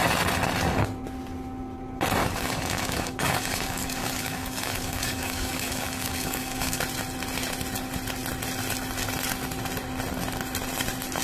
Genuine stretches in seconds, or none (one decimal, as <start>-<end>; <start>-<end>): 0.0-2.2; 6.8-11.2